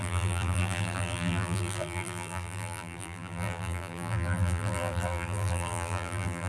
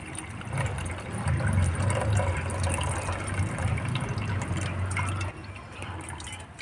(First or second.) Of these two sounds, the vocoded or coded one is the first